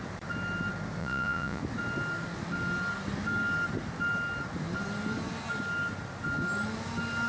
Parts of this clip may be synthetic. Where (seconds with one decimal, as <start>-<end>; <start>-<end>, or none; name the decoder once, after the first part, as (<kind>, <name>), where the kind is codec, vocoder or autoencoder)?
1.0-1.6 (vocoder, Vocos)